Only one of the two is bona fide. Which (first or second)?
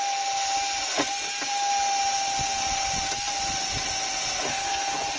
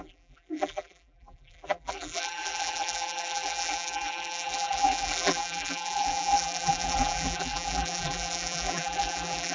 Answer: first